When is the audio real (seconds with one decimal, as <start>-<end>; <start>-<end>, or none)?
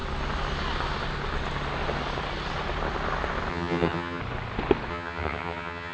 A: 0.0-3.5; 4.2-4.9